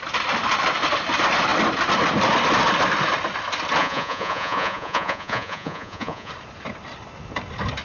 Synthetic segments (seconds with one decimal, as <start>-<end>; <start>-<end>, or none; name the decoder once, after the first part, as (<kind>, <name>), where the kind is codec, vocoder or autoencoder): 3.8-6.3 (vocoder, Vocos)